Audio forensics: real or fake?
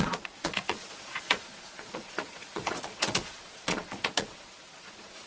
fake